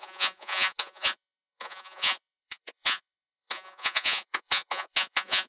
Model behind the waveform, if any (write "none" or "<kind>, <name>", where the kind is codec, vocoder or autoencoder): vocoder, Vocos